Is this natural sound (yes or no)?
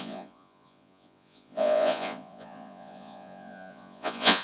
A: no